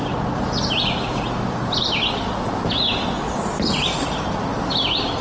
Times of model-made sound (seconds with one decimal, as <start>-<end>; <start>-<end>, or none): none